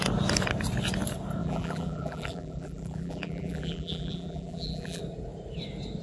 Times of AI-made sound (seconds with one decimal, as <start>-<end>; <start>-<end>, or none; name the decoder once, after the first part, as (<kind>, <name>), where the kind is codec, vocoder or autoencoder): 1.4-5.0 (vocoder, BigVGAN v2)

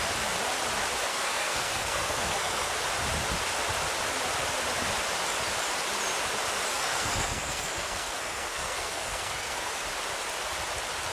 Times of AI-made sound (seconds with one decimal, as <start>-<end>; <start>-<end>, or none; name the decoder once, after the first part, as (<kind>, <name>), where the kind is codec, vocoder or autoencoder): 1.1-2.7 (codec, SNAC); 6.7-9.8

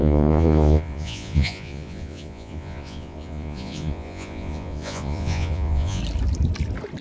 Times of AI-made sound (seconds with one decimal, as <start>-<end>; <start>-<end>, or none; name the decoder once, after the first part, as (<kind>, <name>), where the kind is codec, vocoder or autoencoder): 0.0-6.0 (vocoder, Vocos)

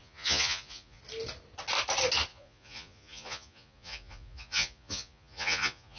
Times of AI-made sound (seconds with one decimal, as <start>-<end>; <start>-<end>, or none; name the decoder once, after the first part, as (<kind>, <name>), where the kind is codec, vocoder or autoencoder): 0.0-1.0 (vocoder, Vocos); 2.3-6.0

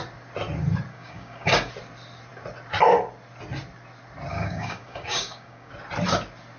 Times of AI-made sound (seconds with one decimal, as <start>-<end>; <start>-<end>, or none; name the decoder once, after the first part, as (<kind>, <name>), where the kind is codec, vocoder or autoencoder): 0.9-1.7 (codec, DAC); 4.3-5.7

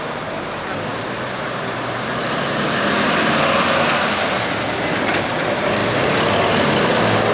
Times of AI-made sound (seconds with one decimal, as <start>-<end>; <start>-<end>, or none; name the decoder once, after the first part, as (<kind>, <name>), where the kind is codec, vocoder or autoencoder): none

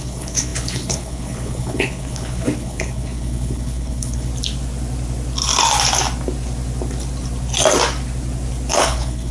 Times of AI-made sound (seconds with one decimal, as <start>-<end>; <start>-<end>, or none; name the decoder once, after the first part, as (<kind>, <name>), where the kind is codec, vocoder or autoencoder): 0.0-4.3 (codec, HILCodec); 8.7-9.3

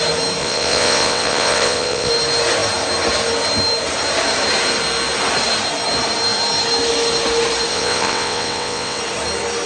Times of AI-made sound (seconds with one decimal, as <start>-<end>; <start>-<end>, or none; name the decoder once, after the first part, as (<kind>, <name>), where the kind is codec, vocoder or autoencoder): 0.4-2.1 (vocoder, WaveNeXt); 7.7-9.0